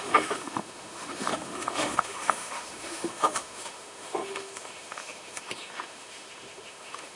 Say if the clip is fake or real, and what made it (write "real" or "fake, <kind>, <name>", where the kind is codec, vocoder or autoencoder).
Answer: fake, autoencoder, DAC-VAE